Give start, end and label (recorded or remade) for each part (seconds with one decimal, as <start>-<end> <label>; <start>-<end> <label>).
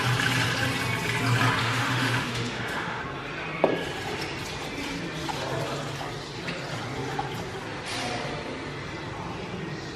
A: 0.0-1.6 recorded; 1.6-3.0 remade; 3.0-10.0 recorded